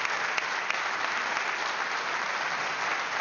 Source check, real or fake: real